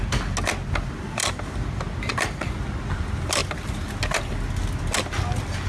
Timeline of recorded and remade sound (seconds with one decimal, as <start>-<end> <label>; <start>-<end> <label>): 0.0-5.7 recorded